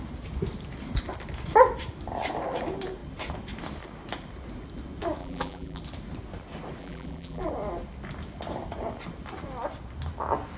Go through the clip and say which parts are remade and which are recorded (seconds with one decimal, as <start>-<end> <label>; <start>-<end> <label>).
0.0-5.2 recorded; 5.2-5.8 remade; 5.8-6.8 recorded; 6.8-7.5 remade; 7.5-10.6 recorded